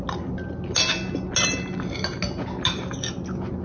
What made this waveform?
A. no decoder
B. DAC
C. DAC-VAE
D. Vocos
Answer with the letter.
A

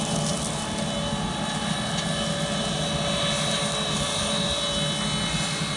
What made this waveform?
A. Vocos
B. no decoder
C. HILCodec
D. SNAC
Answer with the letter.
B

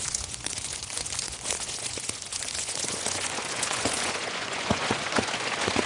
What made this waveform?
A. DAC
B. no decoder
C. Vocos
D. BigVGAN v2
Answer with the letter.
C